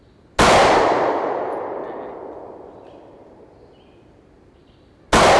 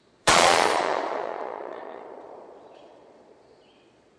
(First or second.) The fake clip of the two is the second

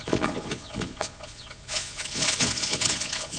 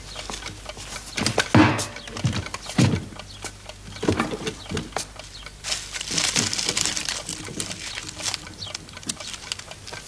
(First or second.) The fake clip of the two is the first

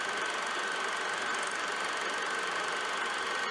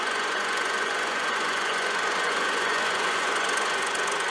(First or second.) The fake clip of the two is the second